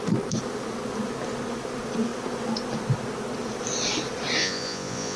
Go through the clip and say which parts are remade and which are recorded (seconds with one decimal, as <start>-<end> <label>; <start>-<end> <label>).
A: 0.0-4.4 recorded; 4.4-5.2 remade